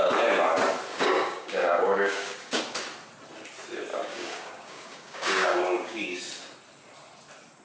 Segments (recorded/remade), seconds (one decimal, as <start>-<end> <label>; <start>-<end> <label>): 0.0-0.9 recorded; 0.9-2.6 remade; 2.6-3.9 recorded; 3.9-6.2 remade; 6.2-7.6 recorded